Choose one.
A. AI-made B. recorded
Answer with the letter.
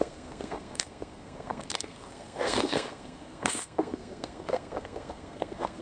A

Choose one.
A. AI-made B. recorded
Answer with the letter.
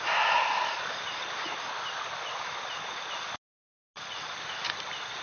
B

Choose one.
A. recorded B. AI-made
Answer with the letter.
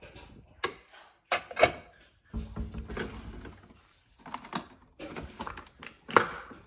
A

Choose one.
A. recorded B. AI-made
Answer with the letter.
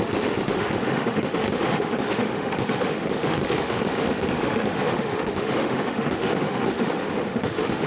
B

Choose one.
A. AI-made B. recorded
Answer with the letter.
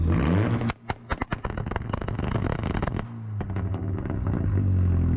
B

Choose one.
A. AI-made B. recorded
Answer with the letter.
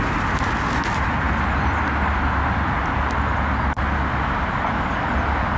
B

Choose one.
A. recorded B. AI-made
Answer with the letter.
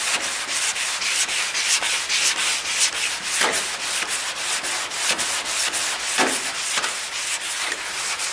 A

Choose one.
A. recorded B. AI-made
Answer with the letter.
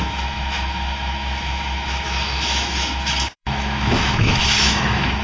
B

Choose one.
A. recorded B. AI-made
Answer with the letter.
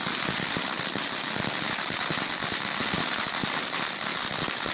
A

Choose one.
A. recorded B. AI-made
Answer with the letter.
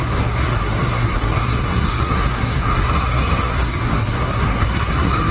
B